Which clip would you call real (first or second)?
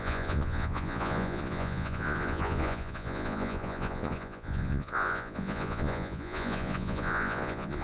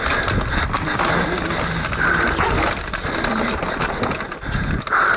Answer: second